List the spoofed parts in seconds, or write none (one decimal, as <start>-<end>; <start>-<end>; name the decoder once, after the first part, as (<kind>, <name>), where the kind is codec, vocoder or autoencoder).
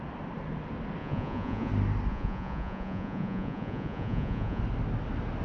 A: 1.0-1.7 (vocoder, Vocos); 2.1-4.6